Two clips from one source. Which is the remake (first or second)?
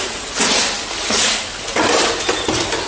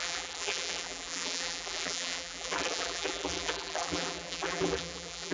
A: second